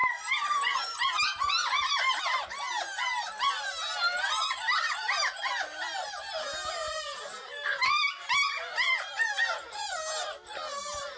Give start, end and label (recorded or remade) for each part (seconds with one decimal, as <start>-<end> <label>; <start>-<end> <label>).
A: 0.0-11.2 recorded